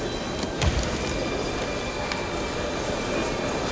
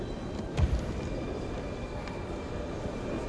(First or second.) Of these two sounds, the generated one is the second